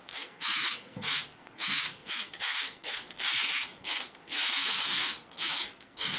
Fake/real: fake